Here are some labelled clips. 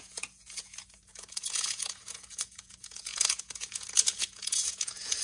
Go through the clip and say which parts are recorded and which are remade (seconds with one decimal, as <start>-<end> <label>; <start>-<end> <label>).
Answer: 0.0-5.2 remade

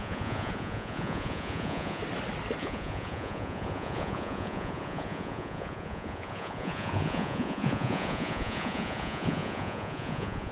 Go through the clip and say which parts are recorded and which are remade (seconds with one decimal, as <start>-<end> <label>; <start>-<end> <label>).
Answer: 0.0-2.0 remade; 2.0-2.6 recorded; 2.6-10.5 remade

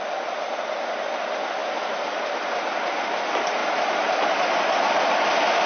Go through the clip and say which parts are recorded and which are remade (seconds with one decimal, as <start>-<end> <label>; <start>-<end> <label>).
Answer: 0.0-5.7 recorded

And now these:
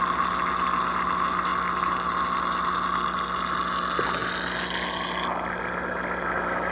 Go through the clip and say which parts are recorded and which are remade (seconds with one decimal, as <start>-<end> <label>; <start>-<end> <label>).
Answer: 0.0-6.7 recorded